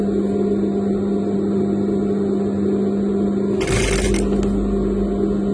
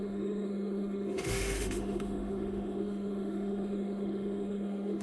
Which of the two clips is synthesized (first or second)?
second